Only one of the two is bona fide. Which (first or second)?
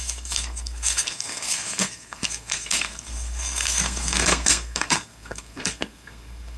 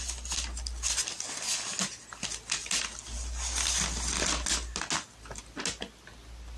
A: second